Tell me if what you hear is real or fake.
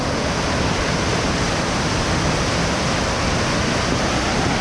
real